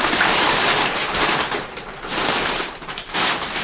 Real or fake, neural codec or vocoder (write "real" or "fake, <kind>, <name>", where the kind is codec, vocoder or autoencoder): fake, vocoder, BigVGAN v2